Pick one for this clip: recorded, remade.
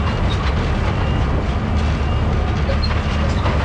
recorded